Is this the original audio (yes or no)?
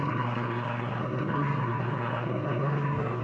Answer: no